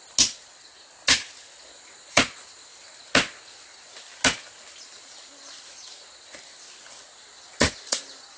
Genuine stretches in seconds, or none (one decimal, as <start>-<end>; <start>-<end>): 0.0-8.4